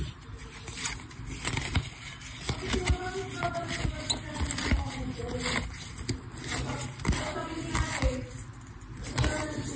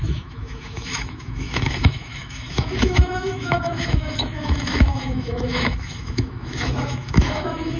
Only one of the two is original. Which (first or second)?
first